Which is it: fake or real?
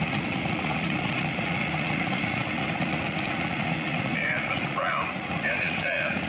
fake